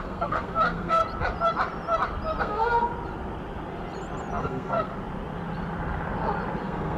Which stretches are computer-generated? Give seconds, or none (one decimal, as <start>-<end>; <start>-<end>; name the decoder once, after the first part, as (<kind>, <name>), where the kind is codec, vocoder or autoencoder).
0.0-1.0 (codec, SNAC); 2.4-2.9; 4.4-4.9; 6.6-7.0